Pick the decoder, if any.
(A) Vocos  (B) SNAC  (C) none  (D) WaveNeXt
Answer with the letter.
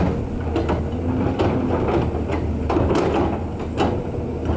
C